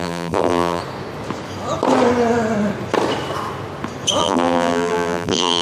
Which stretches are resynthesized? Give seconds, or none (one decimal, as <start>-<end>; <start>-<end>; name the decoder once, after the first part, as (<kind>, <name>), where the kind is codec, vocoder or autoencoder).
0.0-0.8 (vocoder, BigVGAN v2); 4.2-5.6